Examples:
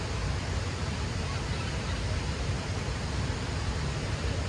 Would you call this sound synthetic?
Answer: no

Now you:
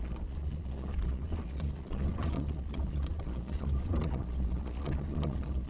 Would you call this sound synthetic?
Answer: yes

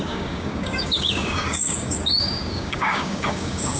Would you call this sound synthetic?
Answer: yes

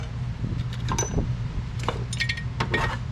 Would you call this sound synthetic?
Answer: no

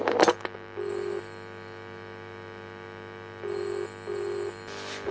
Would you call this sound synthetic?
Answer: no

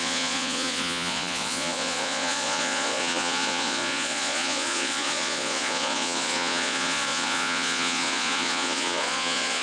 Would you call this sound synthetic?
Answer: yes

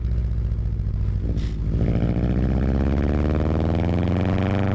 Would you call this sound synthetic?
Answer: no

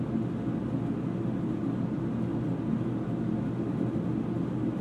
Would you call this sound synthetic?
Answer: no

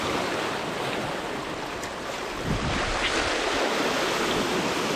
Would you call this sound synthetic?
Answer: no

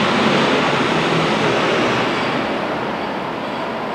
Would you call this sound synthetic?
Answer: no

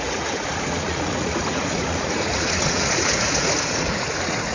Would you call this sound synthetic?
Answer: yes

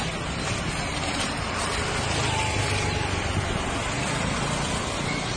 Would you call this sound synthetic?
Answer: no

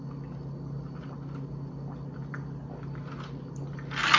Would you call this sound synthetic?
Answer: no